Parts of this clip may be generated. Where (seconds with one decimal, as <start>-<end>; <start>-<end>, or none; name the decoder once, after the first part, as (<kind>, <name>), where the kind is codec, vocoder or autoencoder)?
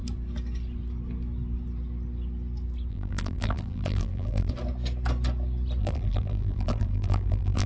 2.9-4.5 (vocoder, BigVGAN v2); 5.8-7.7